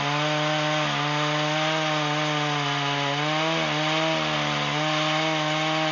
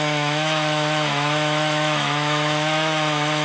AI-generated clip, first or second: second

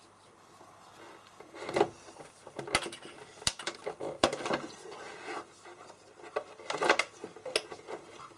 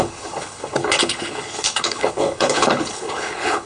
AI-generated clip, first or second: second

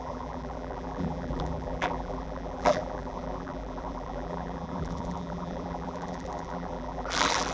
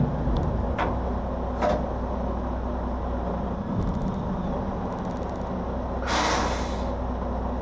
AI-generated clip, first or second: first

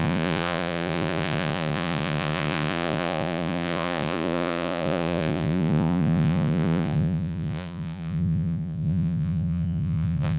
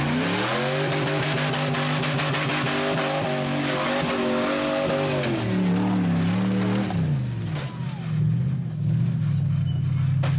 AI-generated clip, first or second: first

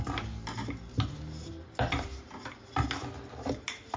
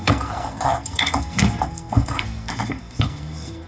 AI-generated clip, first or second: second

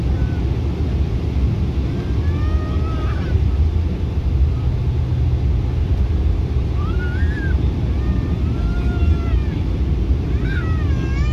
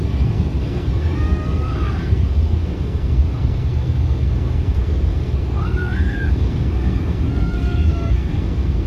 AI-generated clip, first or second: second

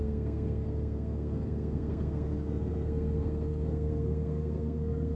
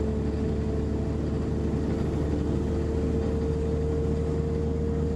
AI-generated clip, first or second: first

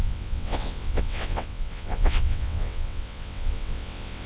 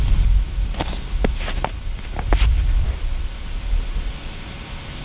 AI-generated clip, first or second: first